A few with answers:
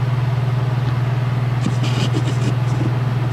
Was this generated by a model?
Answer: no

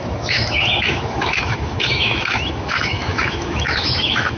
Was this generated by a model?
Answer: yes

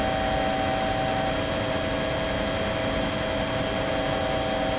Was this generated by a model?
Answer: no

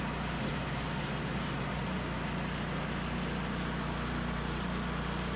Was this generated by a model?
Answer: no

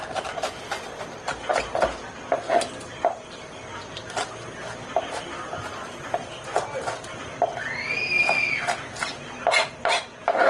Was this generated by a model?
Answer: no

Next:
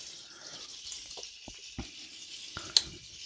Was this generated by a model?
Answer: no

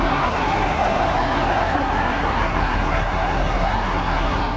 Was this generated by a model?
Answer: yes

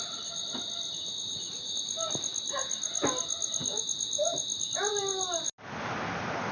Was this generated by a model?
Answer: no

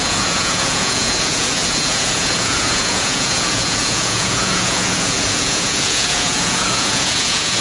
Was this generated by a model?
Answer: yes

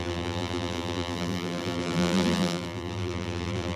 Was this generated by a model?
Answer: yes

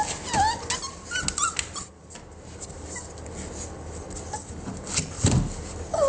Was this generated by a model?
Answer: no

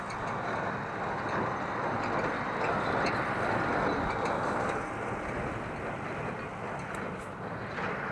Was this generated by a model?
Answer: no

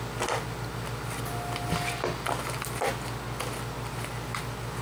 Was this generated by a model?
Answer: no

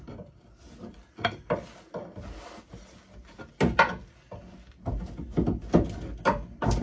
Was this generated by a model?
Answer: no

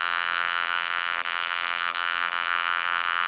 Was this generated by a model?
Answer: yes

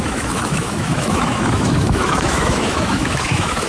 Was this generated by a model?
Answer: yes